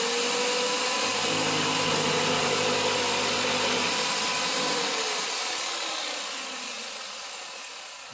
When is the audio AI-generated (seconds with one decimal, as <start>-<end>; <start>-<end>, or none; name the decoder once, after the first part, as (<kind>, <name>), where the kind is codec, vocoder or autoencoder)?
1.1-4.1 (vocoder, BigVGAN v2)